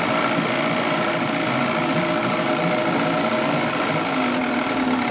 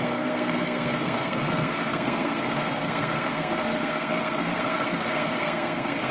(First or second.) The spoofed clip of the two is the second